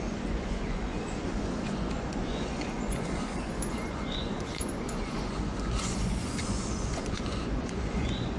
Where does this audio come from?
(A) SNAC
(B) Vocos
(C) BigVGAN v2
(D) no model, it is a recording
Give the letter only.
B